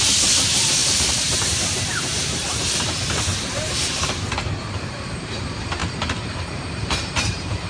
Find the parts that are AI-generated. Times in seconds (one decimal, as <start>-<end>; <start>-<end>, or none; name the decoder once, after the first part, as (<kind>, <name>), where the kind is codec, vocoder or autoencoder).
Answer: 0.0-3.3 (vocoder, BigVGAN v2); 4.4-7.7